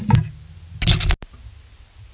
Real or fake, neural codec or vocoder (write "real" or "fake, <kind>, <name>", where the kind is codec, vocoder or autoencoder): real